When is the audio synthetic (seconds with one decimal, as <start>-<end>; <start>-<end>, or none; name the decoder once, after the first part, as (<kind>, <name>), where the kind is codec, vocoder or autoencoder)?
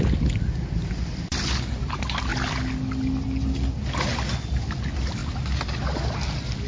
none